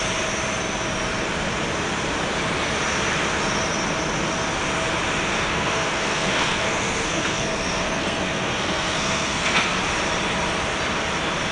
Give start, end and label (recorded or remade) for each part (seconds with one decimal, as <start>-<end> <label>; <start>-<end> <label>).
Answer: 0.0-5.3 recorded; 5.3-9.8 remade; 9.8-11.5 recorded